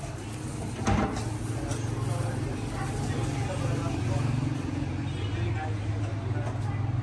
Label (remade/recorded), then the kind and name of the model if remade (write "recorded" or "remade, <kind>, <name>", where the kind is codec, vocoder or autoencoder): recorded